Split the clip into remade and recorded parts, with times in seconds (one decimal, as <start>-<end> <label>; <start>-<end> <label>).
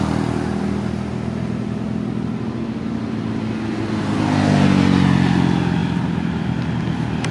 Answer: 0.0-7.3 recorded